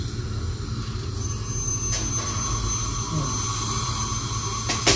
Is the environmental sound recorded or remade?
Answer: recorded